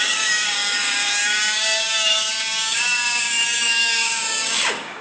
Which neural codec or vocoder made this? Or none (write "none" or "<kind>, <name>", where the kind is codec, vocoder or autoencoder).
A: codec, DAC